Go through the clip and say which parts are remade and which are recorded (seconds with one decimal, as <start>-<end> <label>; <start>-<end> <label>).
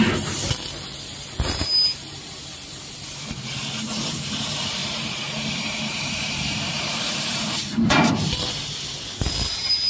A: 0.0-2.2 recorded; 2.2-2.9 remade; 2.9-4.8 recorded; 4.8-8.1 remade; 8.1-9.9 recorded